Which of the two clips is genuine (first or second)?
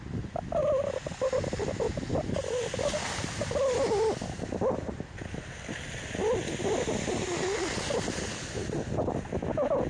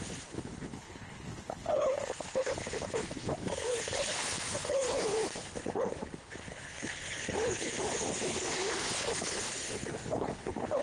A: first